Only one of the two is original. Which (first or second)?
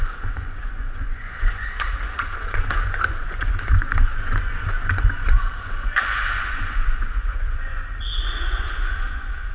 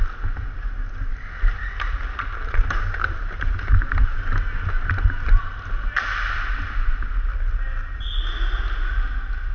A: second